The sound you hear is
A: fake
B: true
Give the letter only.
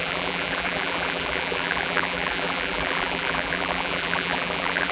A